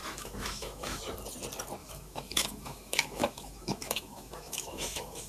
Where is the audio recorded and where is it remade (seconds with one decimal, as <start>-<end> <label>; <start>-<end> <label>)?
0.0-1.0 remade; 1.0-1.8 recorded; 1.8-5.3 remade